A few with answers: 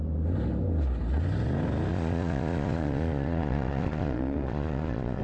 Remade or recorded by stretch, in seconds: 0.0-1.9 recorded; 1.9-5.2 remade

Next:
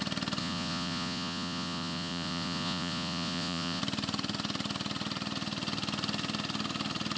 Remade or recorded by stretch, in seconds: 0.0-0.4 recorded; 0.4-3.8 remade; 3.8-7.2 recorded

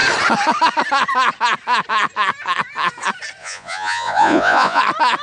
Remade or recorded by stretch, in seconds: 0.0-3.4 recorded; 3.4-4.8 remade; 4.8-5.2 recorded

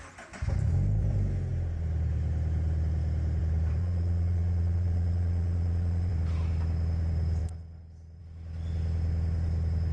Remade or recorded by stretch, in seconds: 0.0-3.8 recorded; 3.8-6.1 remade; 6.1-9.9 recorded

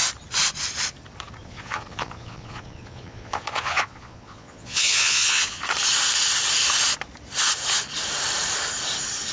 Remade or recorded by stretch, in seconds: 0.0-1.4 recorded; 1.4-5.6 remade; 5.6-9.3 recorded

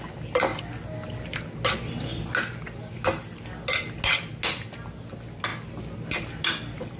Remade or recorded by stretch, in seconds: 0.0-7.0 recorded